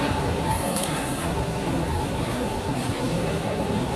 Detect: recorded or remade remade